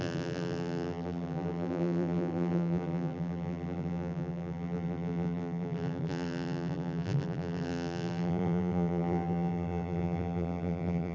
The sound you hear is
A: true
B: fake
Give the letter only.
B